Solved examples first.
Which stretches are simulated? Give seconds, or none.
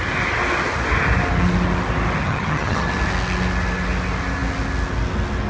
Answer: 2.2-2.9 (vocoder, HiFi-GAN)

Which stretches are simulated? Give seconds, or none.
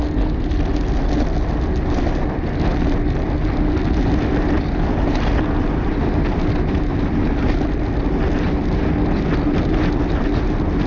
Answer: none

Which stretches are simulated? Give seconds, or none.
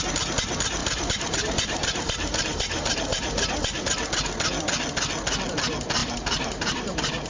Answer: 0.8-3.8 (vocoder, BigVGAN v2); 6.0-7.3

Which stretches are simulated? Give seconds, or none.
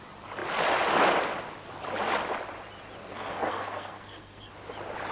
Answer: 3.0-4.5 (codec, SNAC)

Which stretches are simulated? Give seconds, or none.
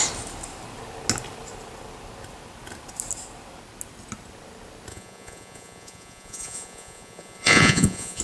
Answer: 4.9-8.2 (vocoder, Vocos)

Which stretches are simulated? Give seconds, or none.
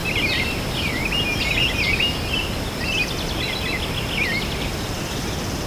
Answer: none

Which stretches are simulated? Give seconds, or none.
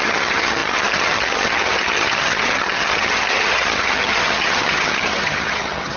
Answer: 0.0-6.0 (vocoder, HiFi-GAN)